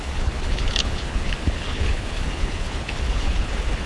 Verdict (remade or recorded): remade